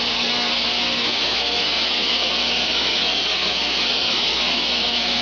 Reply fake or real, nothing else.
fake